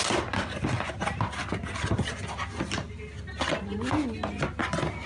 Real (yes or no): yes